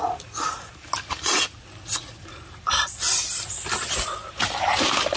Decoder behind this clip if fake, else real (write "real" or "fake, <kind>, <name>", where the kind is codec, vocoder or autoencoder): real